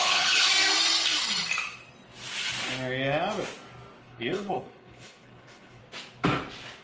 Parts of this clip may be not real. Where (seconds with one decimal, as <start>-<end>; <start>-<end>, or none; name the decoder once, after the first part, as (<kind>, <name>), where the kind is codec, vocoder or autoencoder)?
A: 0.0-0.5 (codec, HILCodec); 4.0-5.8